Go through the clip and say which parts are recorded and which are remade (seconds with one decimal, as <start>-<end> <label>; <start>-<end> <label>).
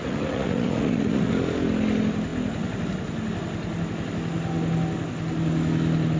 0.0-1.3 remade; 1.3-6.2 recorded